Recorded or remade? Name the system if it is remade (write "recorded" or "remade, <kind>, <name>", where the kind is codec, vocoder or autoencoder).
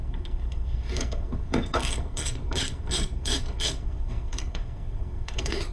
remade, codec, SNAC